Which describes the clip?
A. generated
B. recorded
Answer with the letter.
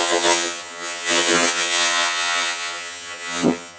A